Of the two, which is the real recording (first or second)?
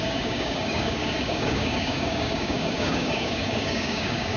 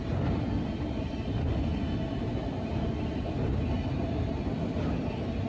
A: second